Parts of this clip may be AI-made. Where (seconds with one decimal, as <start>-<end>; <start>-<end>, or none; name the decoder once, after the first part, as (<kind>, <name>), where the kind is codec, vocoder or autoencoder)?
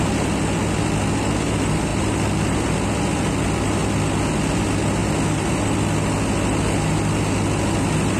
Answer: 1.9-3.0 (vocoder, BigVGAN v2); 5.0-5.5